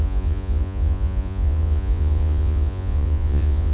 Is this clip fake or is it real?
fake